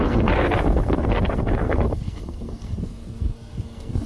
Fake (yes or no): yes